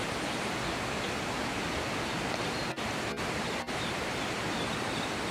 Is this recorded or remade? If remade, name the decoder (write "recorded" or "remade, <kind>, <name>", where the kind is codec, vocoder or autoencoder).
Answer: recorded